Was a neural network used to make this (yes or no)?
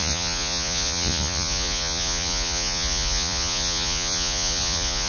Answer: yes